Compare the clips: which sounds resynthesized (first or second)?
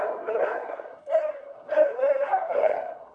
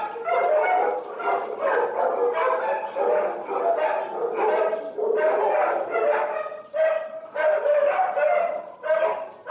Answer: first